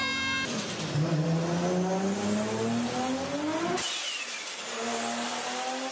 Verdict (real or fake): real